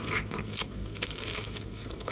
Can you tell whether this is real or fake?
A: fake